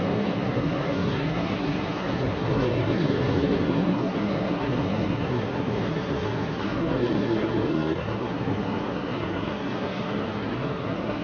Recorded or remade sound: remade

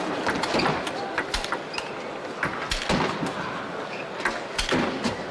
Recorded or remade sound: recorded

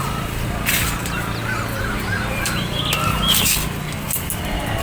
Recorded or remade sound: recorded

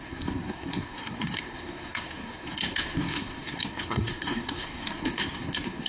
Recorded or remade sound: remade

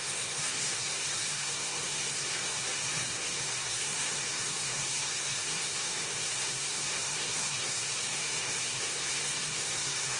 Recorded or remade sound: remade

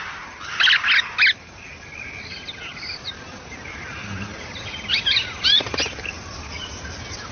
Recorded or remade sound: recorded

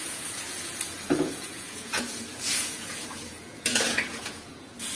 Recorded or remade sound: remade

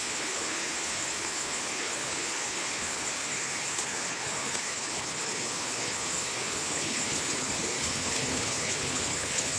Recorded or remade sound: remade